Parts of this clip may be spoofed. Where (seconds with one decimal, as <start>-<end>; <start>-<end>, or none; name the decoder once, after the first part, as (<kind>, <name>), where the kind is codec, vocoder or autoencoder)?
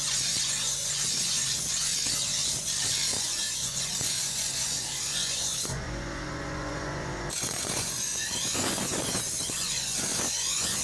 0.0-1.9 (vocoder, Vocos); 3.2-10.8